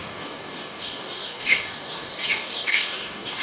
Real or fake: fake